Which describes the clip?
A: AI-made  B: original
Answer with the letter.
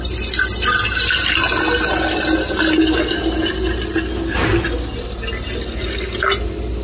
B